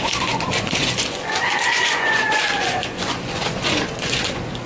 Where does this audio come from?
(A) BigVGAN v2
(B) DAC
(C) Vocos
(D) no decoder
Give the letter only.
C